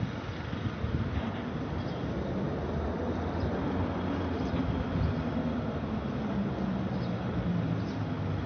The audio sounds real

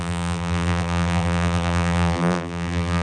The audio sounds fake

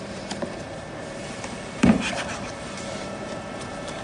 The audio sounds fake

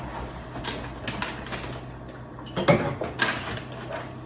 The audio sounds real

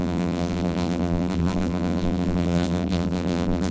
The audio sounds fake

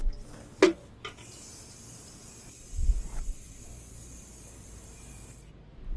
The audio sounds real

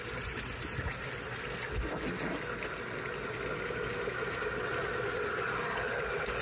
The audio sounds real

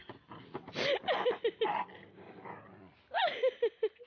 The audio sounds real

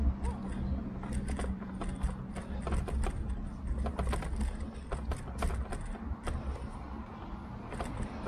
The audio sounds real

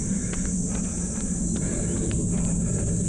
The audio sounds real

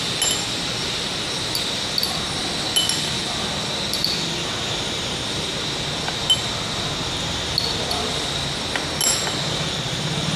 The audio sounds real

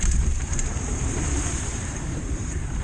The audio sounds fake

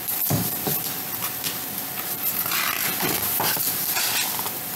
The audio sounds real